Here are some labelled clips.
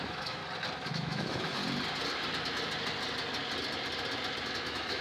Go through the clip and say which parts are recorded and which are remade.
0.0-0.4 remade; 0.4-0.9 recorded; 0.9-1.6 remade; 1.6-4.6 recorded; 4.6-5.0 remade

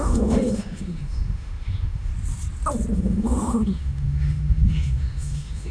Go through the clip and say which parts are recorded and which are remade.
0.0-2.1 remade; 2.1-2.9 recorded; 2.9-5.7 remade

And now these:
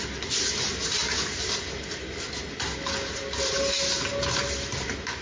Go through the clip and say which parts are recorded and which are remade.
0.0-5.2 recorded

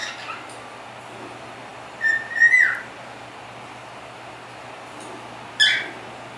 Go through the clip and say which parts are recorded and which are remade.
0.0-6.4 recorded

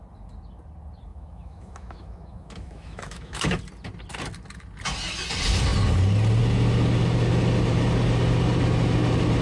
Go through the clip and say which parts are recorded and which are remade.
0.0-1.1 recorded; 1.1-3.6 remade; 3.6-9.4 recorded

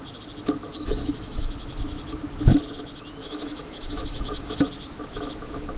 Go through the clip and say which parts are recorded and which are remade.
0.0-0.7 recorded; 0.7-1.5 remade; 1.5-3.2 recorded; 3.2-4.6 remade; 4.6-5.8 recorded